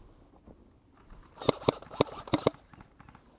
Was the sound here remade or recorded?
recorded